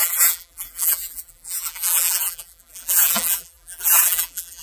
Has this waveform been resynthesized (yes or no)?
yes